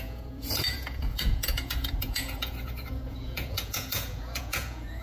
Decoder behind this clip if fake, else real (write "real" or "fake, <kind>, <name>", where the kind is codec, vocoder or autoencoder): fake, vocoder, Vocos